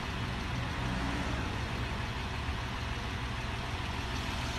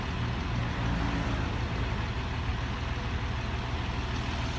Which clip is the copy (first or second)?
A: first